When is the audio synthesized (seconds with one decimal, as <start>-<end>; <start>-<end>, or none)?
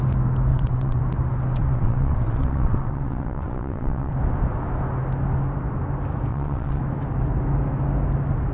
0.5-1.0; 1.6-4.1; 6.3-6.8